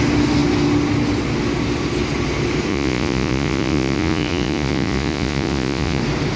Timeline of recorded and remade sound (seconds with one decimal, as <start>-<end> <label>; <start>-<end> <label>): 0.0-2.7 recorded; 2.7-6.0 remade; 6.0-6.4 recorded